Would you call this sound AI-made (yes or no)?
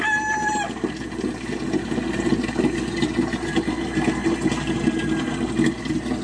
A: no